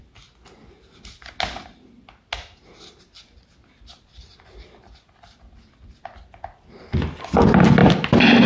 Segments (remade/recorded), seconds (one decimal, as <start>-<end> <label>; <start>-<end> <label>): 0.0-8.5 recorded